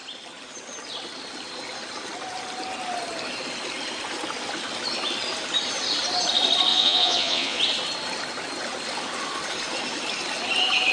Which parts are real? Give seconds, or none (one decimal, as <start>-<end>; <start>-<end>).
0.0-6.7; 7.6-10.9